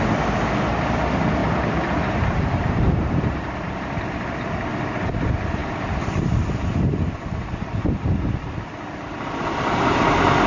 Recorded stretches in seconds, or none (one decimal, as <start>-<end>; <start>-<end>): 0.0-1.4; 4.0-5.6; 8.5-10.5